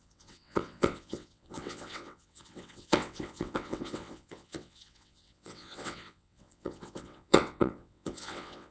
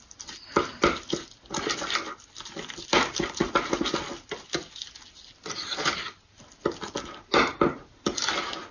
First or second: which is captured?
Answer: second